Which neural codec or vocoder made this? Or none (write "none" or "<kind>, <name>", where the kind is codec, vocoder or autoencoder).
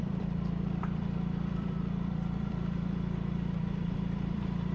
vocoder, BigVGAN v2